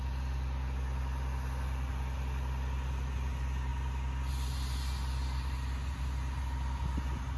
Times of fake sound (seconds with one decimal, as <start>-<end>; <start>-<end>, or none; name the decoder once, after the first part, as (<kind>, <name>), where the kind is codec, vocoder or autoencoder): none